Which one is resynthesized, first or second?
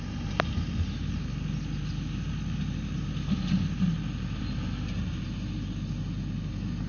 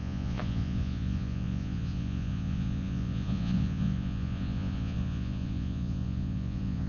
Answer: second